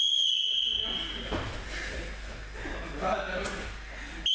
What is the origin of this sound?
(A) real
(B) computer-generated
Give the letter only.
A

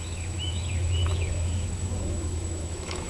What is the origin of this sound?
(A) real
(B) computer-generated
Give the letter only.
B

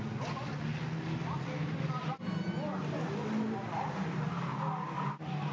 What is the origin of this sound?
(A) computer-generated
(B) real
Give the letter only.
B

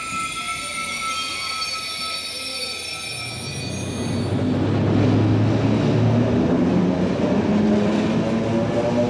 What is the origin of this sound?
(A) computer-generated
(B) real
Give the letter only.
B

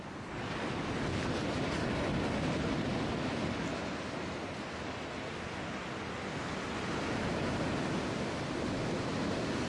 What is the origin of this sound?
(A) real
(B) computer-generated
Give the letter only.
A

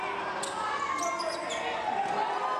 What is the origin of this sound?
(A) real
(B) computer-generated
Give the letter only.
A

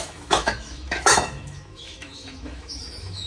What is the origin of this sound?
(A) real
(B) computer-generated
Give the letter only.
B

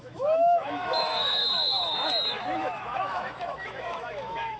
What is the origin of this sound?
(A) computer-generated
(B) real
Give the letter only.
A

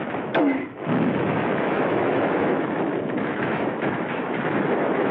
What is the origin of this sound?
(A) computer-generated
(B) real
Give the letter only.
A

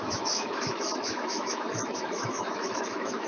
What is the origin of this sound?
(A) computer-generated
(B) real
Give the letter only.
A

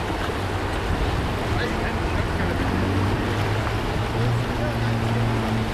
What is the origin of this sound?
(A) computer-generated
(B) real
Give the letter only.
B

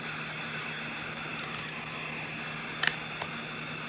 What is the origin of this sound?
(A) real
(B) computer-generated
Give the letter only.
A